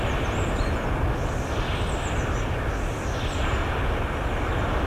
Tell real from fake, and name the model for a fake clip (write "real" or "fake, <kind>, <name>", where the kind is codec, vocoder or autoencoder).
real